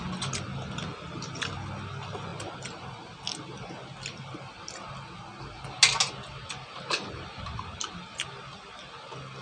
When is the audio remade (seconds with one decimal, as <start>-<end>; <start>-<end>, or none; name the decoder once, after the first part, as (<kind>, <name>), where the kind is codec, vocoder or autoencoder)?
none